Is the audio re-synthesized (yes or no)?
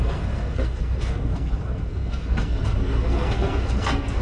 yes